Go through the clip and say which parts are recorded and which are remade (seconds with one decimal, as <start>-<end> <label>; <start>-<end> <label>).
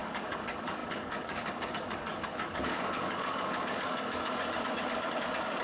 0.0-5.6 remade